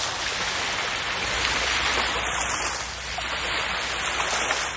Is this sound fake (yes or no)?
no